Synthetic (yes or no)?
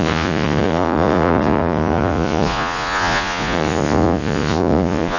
yes